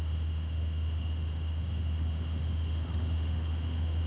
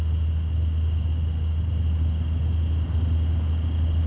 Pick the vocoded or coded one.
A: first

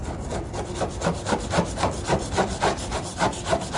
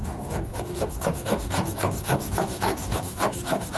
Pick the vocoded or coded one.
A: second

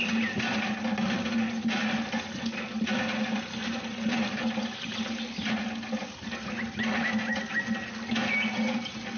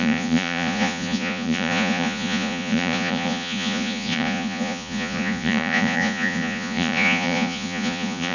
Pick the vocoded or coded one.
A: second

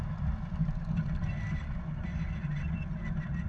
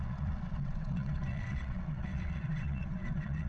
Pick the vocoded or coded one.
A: second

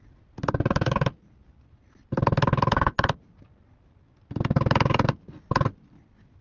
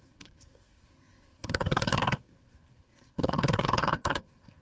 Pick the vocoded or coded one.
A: second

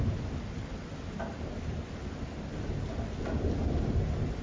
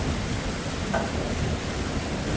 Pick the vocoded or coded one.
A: second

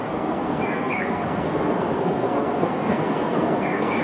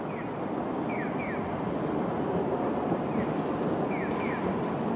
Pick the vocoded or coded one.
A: first